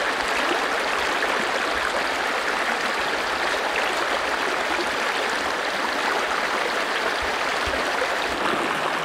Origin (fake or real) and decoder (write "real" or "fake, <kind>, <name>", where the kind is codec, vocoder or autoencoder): real